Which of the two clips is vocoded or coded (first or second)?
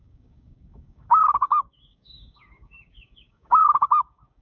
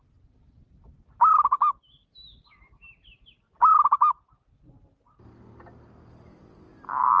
first